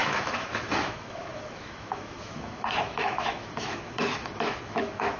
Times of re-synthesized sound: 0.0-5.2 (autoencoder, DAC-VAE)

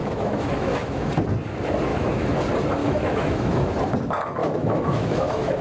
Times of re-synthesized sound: 0.0-1.1 (autoencoder, DAC-VAE); 1.9-2.4; 2.8-3.7; 4.4-5.6